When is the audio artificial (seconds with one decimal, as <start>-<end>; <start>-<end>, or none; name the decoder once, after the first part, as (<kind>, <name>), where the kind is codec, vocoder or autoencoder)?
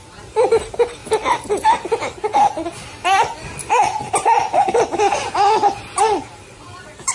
none